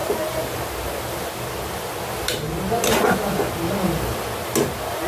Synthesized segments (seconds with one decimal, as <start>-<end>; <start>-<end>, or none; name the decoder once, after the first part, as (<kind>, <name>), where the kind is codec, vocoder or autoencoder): none